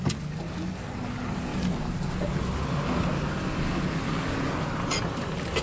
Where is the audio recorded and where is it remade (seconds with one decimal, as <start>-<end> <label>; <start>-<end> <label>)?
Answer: 0.0-5.6 recorded